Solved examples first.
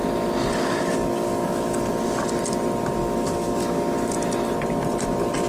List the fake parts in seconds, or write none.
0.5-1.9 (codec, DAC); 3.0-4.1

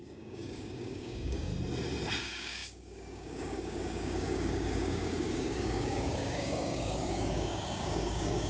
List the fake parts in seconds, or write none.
0.0-1.5 (codec, DAC); 2.2-8.5